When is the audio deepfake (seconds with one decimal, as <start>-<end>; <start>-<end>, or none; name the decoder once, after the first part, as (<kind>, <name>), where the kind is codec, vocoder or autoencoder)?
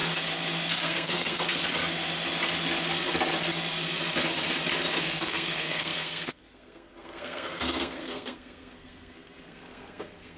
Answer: 0.7-1.6 (codec, SNAC); 5.0-10.4